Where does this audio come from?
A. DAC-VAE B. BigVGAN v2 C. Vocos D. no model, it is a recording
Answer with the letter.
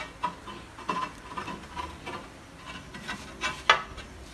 D